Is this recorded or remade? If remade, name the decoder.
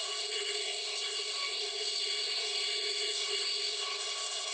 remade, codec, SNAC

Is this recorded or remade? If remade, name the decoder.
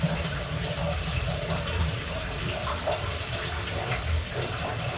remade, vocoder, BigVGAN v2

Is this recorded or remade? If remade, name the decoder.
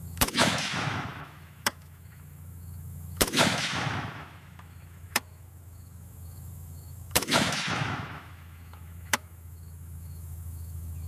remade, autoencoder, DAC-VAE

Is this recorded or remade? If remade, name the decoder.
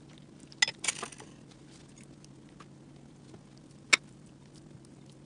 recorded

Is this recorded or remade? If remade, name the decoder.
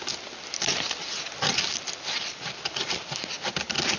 recorded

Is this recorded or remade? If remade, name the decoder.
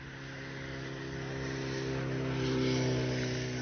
recorded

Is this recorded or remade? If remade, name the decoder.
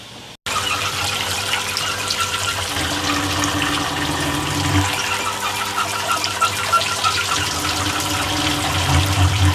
recorded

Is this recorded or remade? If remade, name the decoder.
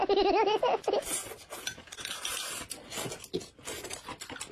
recorded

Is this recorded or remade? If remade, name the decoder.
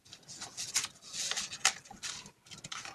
recorded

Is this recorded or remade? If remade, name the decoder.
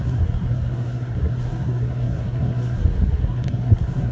remade, codec, SNAC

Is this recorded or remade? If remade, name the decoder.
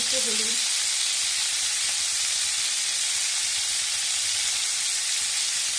recorded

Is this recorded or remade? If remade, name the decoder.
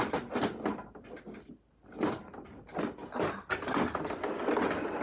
recorded